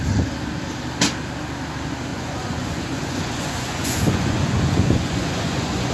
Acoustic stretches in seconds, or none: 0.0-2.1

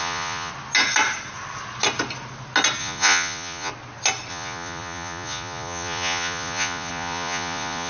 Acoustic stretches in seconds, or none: 0.5-2.8; 3.7-4.3

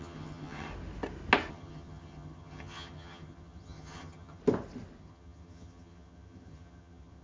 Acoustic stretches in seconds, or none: 0.7-1.5; 4.4-5.0

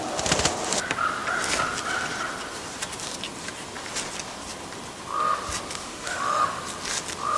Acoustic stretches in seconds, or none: 0.0-5.8; 6.6-7.4

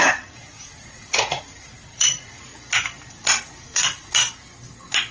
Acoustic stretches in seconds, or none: 2.5-3.1; 4.2-5.1